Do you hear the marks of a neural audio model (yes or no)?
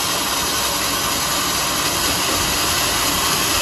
no